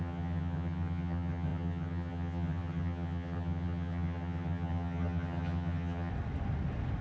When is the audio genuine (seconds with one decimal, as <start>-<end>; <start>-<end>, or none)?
6.1-7.0